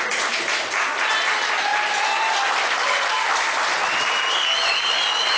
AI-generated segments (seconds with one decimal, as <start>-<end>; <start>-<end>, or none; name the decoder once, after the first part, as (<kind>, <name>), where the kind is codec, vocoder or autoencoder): none